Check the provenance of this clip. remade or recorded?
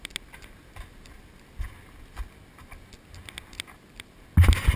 recorded